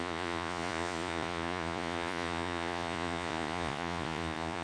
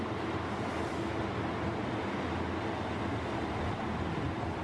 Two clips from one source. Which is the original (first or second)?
second